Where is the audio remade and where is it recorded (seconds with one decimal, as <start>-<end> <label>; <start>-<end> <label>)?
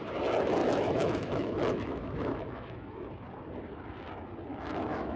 0.0-0.6 recorded; 0.6-3.1 remade; 3.1-4.5 recorded; 4.5-5.2 remade